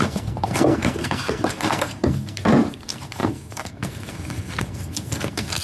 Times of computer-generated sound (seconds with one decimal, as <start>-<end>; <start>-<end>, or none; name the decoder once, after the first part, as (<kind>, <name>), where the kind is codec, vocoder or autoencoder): 0.0-5.6 (codec, SNAC)